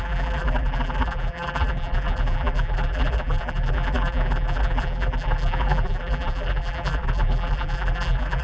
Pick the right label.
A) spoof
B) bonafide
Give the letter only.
A